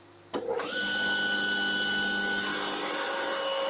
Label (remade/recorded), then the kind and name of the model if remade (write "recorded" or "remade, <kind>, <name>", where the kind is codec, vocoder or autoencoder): recorded